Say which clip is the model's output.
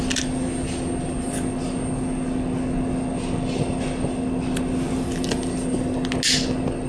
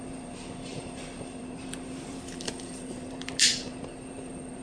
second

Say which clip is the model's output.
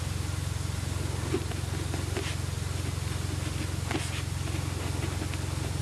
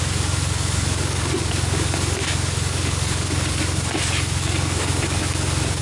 second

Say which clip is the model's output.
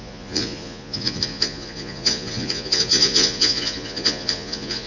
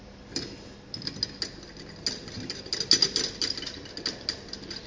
first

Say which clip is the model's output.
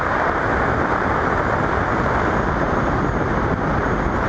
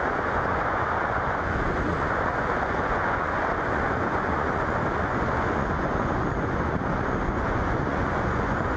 second